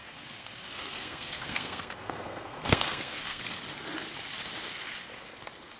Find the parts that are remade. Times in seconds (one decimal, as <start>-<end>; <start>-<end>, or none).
0.0-3.4